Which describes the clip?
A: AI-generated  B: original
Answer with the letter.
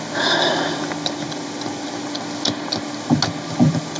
B